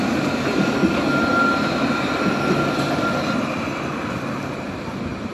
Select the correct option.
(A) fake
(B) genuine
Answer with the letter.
B